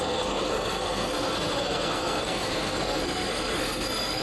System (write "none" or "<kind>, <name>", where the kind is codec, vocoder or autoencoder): codec, SNAC